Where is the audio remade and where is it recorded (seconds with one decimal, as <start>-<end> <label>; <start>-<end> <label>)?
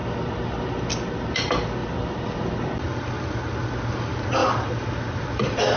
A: 0.0-1.8 recorded; 1.8-3.1 remade; 3.1-4.4 recorded; 4.4-5.8 remade